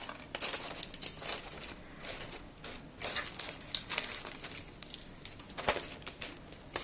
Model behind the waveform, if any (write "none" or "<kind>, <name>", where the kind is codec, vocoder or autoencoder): none